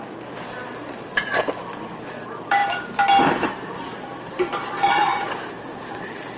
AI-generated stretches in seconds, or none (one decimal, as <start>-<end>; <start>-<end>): 0.0-6.4